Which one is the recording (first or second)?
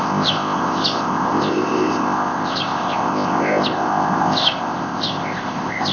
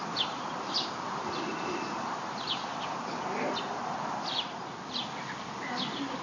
second